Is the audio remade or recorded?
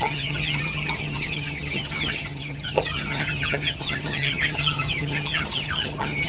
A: remade